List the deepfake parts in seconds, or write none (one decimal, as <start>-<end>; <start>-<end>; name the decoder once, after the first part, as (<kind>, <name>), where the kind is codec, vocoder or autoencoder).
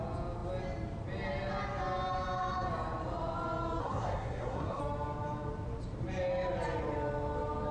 3.8-4.8 (codec, SNAC)